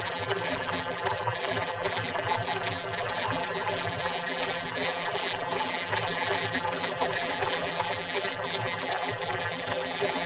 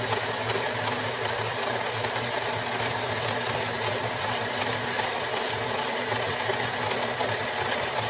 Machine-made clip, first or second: first